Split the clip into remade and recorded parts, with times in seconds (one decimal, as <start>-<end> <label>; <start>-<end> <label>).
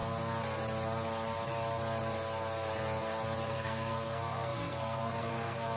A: 0.0-3.5 recorded; 3.5-5.8 remade